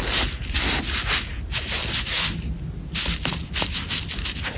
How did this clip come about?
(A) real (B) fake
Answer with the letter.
A